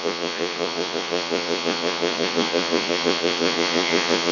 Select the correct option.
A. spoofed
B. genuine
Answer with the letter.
A